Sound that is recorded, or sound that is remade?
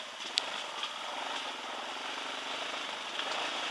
recorded